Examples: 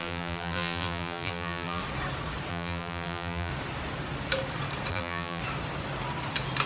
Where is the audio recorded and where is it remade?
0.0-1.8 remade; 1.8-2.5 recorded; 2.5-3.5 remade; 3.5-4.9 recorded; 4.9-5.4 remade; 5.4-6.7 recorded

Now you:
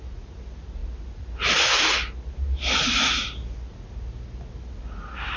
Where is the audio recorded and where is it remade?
0.0-5.4 recorded

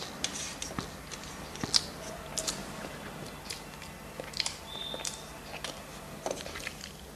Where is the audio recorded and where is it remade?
0.0-1.2 remade; 1.2-7.2 recorded

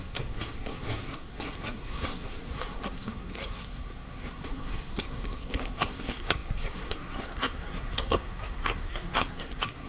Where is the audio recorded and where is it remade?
0.0-9.9 remade

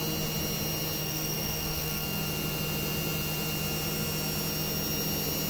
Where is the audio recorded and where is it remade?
0.0-1.0 recorded; 1.0-2.2 remade; 2.2-5.5 recorded

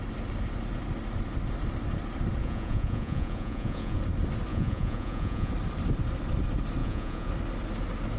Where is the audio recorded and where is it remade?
0.0-2.4 recorded; 2.4-4.0 remade; 4.0-4.5 recorded; 4.5-5.5 remade; 5.5-6.8 recorded; 6.8-7.3 remade; 7.3-8.2 recorded